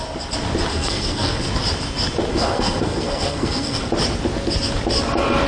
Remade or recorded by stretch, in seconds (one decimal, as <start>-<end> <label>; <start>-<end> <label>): 0.0-0.7 recorded; 0.7-1.4 remade; 1.4-2.3 recorded; 2.3-3.9 remade; 3.9-5.5 recorded